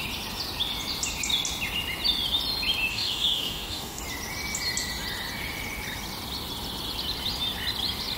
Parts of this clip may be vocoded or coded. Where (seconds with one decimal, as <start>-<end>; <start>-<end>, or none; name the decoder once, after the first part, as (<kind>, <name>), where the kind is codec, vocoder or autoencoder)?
2.9-4.0 (codec, DAC)

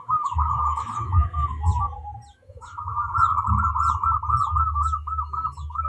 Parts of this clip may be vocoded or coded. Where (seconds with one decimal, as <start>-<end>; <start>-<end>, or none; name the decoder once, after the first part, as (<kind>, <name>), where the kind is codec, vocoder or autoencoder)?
0.0-1.7 (autoencoder, DAC-VAE); 2.3-3.3; 4.6-5.9

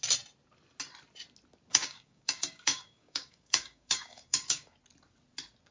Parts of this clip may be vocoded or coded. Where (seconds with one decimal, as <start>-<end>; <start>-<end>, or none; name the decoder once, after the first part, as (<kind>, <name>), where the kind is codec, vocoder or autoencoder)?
1.7-4.7 (codec, DAC)